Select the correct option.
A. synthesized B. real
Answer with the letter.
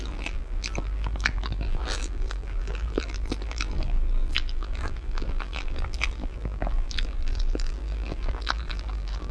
A